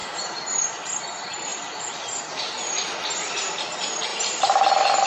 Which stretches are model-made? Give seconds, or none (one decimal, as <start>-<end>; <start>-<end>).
0.0-0.6; 1.5-2.0; 4.1-5.1